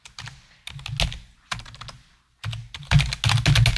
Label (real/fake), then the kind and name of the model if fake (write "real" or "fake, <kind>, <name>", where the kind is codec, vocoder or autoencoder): real